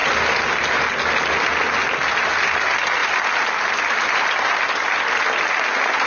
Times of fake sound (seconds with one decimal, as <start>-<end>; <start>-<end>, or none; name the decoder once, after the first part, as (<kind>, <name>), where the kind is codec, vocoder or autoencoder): 1.8-2.4 (vocoder, BigVGAN v2)